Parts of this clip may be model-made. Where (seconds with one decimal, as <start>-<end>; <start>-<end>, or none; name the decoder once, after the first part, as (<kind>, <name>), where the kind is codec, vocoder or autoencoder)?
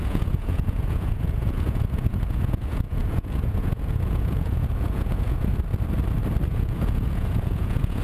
0.0-5.5 (vocoder, Vocos); 6.5-8.0